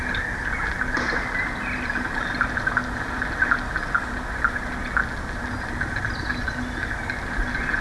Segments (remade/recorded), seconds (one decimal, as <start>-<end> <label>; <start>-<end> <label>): 0.0-7.8 recorded